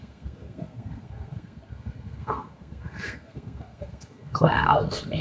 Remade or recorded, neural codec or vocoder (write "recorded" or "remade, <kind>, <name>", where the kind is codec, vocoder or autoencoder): remade, codec, SNAC